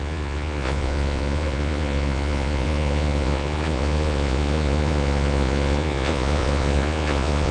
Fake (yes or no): yes